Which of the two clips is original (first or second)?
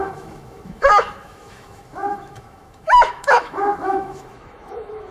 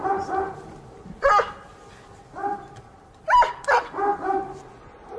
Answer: second